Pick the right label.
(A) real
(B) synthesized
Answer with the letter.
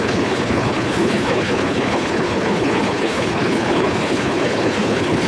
B